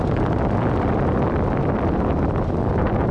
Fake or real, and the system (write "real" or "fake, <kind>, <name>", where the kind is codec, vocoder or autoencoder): fake, vocoder, BigVGAN v2